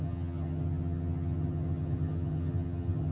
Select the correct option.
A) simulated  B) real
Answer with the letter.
A